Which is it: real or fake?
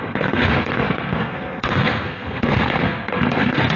fake